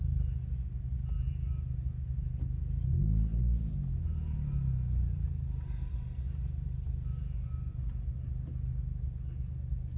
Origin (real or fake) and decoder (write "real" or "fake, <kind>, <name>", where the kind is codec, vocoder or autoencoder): real